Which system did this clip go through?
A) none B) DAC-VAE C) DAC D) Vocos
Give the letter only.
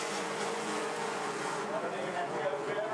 D